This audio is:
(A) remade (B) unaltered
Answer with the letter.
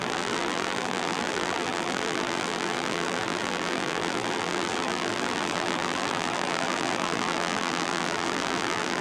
A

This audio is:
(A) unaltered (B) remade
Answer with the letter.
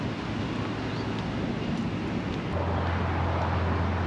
A